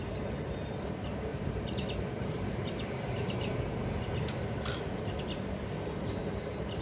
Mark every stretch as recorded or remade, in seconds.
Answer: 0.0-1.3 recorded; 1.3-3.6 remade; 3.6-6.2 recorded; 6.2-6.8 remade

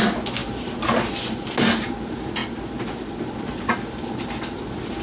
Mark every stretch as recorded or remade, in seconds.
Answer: 0.0-5.0 recorded

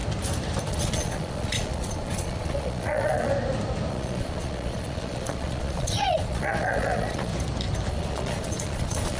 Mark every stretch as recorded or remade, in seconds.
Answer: 0.0-0.7 recorded; 0.7-3.3 remade; 3.3-3.9 recorded; 3.9-7.3 remade; 7.3-7.9 recorded; 7.9-9.2 remade

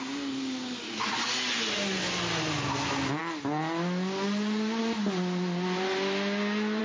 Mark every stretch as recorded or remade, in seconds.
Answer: 0.0-6.8 recorded

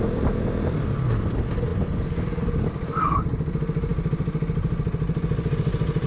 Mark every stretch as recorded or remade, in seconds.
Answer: 0.0-6.1 recorded

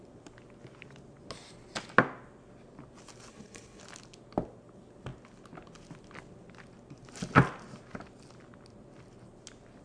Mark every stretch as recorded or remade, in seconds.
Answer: 0.0-3.3 recorded; 3.3-3.8 remade; 3.8-9.8 recorded